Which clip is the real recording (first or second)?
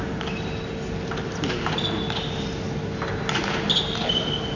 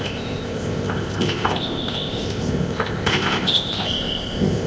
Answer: first